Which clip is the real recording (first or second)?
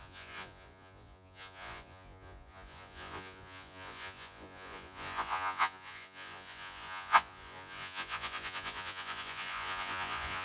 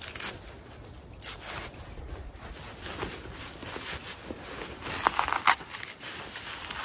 second